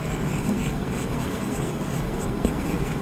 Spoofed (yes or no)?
yes